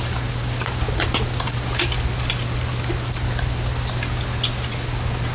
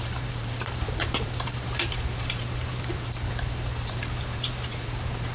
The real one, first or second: first